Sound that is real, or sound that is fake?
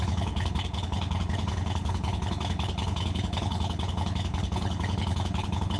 fake